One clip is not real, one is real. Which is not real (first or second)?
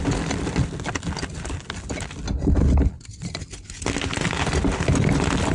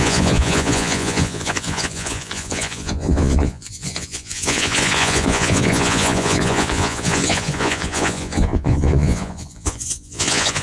second